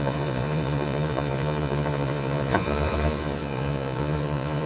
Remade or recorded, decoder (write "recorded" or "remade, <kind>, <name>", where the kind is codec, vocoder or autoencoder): remade, vocoder, Vocos